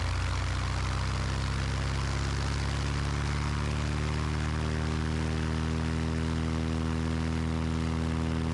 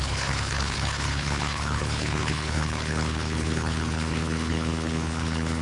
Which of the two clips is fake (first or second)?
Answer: second